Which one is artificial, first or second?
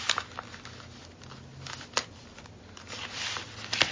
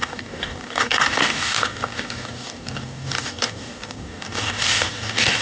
second